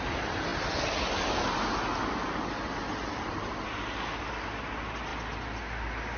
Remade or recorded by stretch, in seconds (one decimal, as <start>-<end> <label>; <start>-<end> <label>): 0.0-6.2 recorded

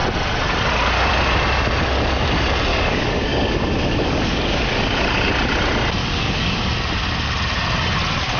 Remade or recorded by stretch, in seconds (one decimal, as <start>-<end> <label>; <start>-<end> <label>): 0.0-2.7 recorded; 2.7-5.3 remade; 5.3-6.0 recorded; 6.0-6.7 remade; 6.7-8.4 recorded

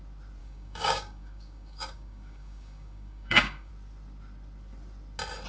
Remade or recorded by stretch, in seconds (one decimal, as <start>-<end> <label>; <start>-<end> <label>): 0.0-0.4 recorded; 0.4-3.7 remade; 3.7-5.5 recorded

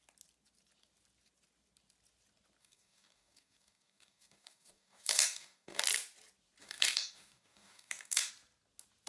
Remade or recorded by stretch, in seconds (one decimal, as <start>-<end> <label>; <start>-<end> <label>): 0.0-2.6 recorded; 2.6-5.8 remade; 5.8-6.6 recorded; 6.6-8.3 remade; 8.3-9.1 recorded

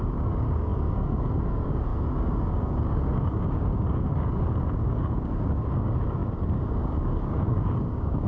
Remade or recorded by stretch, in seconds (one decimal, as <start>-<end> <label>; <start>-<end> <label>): 0.0-8.3 remade